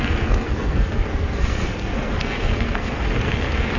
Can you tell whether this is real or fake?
fake